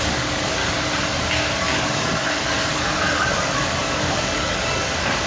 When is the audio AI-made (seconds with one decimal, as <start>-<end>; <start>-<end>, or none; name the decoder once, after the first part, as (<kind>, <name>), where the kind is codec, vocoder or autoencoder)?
0.0-0.6 (codec, DAC); 1.6-5.3